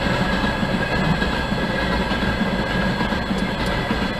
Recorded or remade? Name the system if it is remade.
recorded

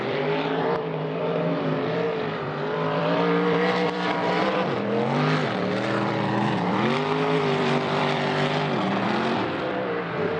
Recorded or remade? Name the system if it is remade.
remade, vocoder, BigVGAN v2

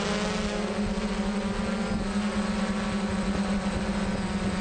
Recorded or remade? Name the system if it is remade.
recorded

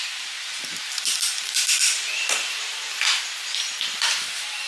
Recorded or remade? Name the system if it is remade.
remade, vocoder, BigVGAN v2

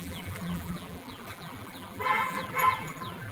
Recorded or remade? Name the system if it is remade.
remade, vocoder, BigVGAN v2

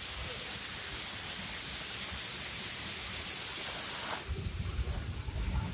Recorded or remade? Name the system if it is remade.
remade, vocoder, BigVGAN v2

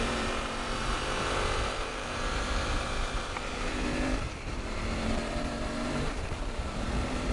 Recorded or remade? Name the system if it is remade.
remade, vocoder, BigVGAN v2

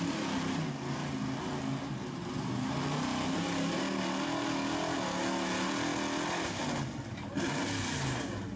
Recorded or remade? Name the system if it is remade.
recorded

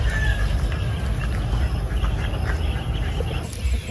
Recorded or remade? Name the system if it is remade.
recorded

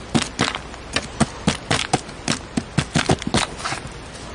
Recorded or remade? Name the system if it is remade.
recorded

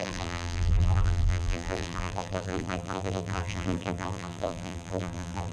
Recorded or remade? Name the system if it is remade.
remade, vocoder, BigVGAN v2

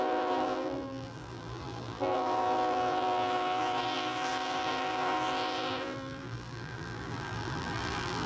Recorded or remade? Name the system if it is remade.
remade, vocoder, BigVGAN v2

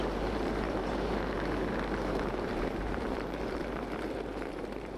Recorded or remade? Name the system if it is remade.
remade, vocoder, BigVGAN v2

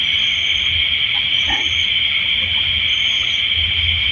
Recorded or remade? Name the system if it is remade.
remade, vocoder, BigVGAN v2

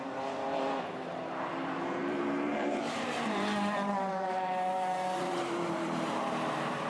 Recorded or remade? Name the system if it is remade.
remade, vocoder, BigVGAN v2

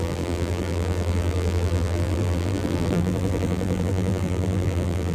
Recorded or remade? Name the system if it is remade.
remade, vocoder, BigVGAN v2